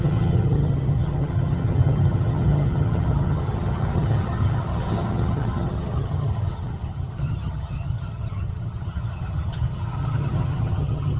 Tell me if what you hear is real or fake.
fake